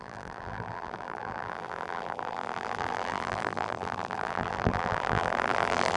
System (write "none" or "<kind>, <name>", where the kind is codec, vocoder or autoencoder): vocoder, BigVGAN v2